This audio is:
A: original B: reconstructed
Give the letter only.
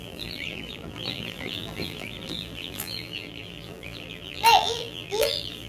B